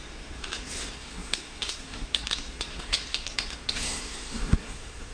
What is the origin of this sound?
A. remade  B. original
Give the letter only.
A